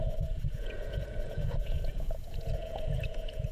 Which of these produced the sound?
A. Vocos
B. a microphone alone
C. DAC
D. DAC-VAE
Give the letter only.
A